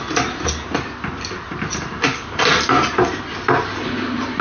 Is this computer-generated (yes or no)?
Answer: no